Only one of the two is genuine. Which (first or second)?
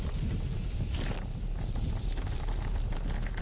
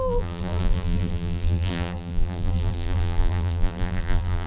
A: first